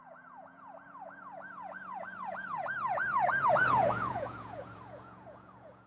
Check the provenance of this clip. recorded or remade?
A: remade